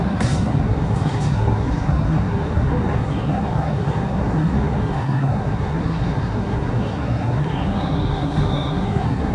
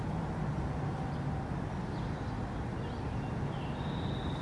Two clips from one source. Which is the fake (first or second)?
first